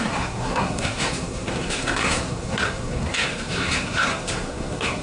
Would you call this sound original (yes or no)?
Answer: no